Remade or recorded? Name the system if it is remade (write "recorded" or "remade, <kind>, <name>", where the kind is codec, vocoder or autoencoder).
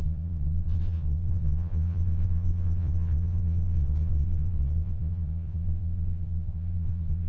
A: remade, vocoder, Vocos